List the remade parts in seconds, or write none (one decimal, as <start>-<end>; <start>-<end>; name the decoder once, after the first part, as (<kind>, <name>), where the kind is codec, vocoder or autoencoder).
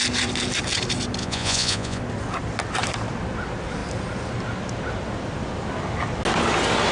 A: 1.2-2.0 (vocoder, Vocos)